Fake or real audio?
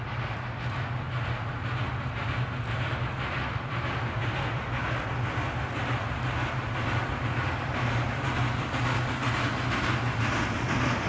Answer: real